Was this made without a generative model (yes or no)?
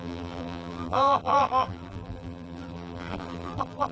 no